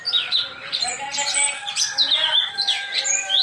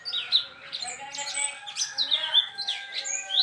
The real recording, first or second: second